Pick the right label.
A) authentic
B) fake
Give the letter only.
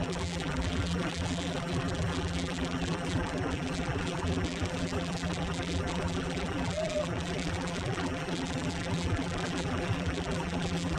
B